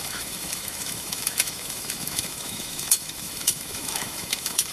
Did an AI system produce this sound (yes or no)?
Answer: yes